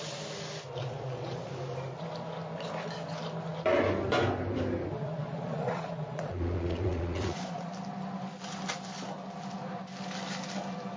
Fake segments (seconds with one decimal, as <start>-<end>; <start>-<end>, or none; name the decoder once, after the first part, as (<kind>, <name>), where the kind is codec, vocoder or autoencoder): 0.8-1.5 (vocoder, Vocos); 5.0-7.7